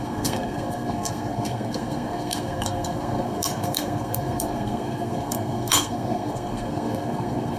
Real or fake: fake